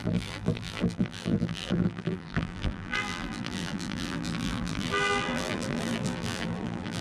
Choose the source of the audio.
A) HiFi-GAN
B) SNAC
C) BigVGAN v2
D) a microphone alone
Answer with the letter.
C